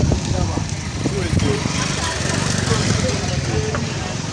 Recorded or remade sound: recorded